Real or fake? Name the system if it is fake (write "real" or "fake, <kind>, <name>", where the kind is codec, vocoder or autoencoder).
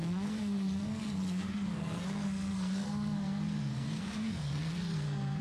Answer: fake, codec, SNAC